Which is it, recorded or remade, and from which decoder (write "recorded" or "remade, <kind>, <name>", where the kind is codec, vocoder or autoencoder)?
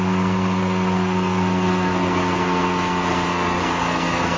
remade, codec, SNAC